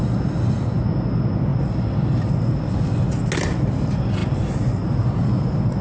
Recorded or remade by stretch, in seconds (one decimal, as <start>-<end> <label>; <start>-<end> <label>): 0.0-1.5 recorded; 1.5-2.4 remade; 2.4-4.2 recorded; 4.2-5.8 remade